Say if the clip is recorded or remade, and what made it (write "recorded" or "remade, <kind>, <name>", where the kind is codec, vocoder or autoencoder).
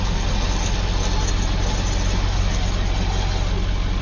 recorded